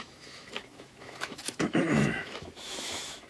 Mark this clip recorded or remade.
remade